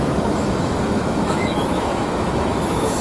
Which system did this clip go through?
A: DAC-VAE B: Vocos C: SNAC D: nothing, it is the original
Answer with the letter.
A